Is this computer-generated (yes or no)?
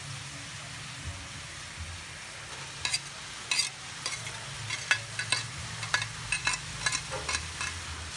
no